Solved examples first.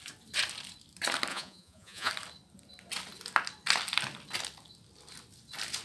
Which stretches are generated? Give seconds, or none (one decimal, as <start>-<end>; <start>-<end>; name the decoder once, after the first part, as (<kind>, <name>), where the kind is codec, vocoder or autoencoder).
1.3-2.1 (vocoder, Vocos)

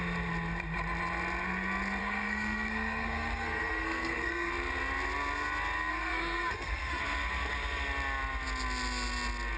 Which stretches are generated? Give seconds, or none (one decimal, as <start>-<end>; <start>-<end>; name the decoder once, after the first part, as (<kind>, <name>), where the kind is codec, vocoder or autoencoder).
2.0-4.5 (codec, SNAC); 5.9-7.0

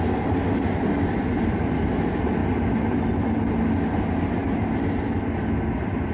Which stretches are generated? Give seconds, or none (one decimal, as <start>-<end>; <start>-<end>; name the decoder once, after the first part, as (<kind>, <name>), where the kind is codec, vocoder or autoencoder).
none

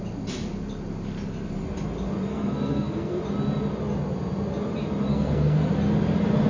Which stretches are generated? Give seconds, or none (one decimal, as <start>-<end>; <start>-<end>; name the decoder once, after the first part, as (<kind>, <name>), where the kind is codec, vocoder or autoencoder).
2.3-3.2 (codec, SNAC); 5.1-5.7

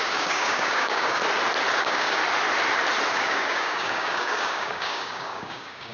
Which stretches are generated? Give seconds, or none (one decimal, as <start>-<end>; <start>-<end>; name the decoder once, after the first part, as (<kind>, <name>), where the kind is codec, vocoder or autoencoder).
0.0-1.2 (codec, DAC); 1.8-2.2; 3.1-5.9

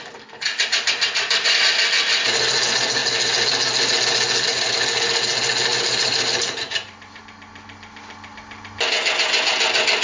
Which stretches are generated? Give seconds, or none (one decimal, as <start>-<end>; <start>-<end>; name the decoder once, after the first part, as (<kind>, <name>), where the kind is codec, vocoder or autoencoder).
5.7-7.2 (vocoder, BigVGAN v2)

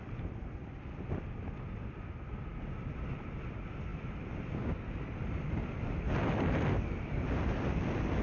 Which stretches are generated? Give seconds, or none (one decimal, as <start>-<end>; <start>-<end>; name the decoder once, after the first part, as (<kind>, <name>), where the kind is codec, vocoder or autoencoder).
none